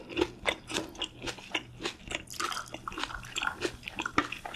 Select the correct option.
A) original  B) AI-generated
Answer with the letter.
A